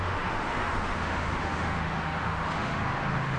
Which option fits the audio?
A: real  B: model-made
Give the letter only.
B